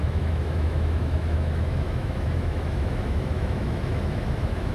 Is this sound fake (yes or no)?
yes